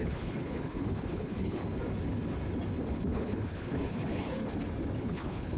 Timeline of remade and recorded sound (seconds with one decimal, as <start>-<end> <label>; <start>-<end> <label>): 0.0-1.6 remade; 1.6-2.9 recorded; 2.9-4.3 remade; 4.3-5.0 recorded; 5.0-5.6 remade